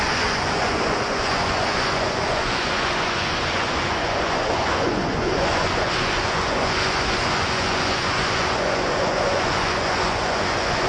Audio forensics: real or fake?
fake